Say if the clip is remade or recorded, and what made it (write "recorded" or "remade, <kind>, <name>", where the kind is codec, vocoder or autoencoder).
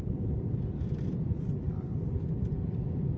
recorded